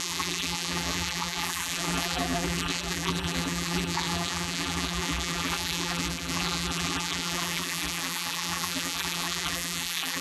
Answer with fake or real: fake